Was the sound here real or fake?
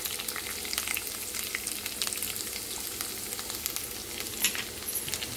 real